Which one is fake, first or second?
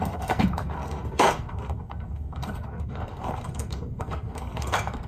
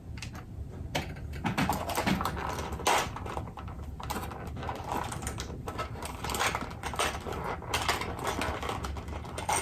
first